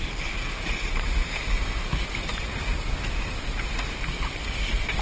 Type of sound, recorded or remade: remade